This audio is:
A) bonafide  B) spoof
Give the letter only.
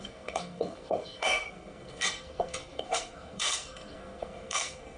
B